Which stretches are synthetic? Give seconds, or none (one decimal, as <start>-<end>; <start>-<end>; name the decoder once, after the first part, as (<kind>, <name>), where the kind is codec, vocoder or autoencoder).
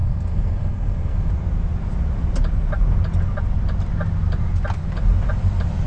0.0-1.3 (codec, SNAC)